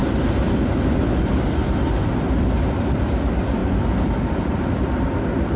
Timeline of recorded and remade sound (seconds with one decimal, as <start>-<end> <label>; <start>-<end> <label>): 0.0-5.6 recorded